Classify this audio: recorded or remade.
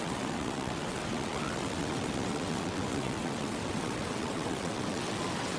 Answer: remade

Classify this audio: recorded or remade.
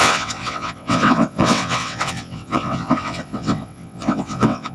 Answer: remade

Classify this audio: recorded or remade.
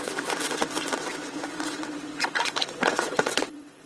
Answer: remade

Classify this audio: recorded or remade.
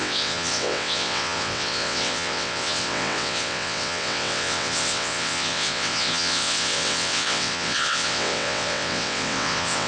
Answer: remade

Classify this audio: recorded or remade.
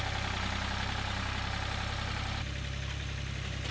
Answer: recorded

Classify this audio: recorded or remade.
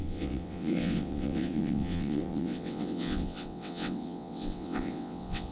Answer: remade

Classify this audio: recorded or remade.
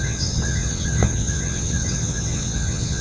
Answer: remade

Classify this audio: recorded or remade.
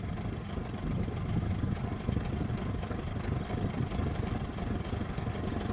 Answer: recorded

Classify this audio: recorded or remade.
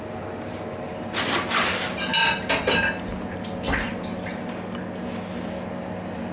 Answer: recorded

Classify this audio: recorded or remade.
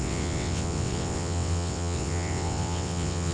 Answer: remade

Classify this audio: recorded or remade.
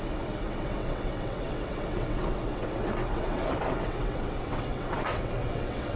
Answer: remade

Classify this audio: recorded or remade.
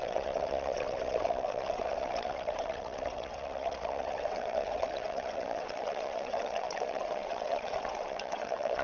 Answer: remade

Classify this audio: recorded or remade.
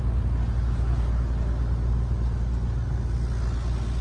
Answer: recorded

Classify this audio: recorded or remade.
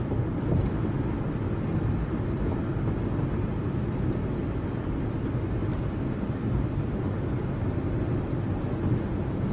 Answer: recorded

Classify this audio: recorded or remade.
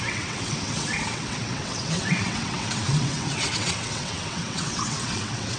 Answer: remade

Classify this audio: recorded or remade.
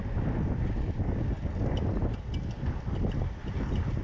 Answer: recorded